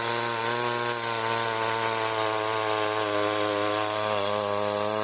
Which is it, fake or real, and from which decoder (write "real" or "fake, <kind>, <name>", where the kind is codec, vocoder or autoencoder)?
real